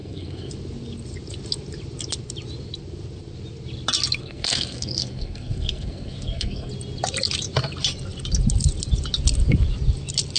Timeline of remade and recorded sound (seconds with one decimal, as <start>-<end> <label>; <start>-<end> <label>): 0.0-0.5 remade; 0.5-4.2 recorded; 4.2-6.7 remade; 6.7-10.4 recorded